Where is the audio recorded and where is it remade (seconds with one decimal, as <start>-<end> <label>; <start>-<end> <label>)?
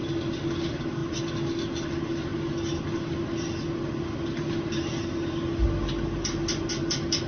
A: 0.0-7.3 recorded